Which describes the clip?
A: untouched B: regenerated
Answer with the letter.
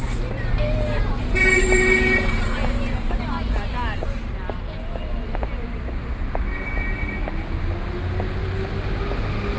A